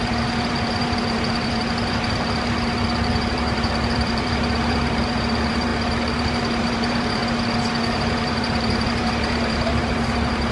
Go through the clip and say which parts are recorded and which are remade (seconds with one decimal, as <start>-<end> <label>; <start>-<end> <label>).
0.0-7.2 remade; 7.2-7.7 recorded; 7.7-10.5 remade